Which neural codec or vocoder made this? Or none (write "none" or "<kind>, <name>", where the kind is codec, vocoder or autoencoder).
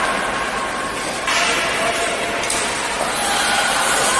none